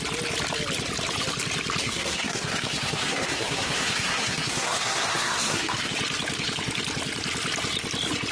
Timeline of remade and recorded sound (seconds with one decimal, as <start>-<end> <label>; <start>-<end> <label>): 0.0-1.8 recorded; 1.8-5.9 remade; 5.9-8.3 recorded